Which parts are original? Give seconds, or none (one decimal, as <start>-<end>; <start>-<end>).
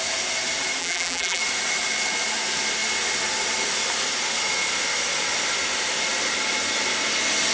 0.0-0.8; 1.4-7.5